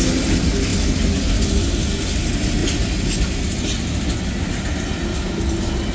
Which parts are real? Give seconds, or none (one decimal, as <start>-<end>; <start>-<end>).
0.0-5.9